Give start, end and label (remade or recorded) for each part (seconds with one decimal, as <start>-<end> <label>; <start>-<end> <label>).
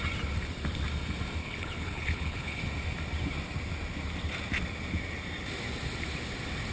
0.0-1.4 recorded; 1.4-2.6 remade; 2.6-6.7 recorded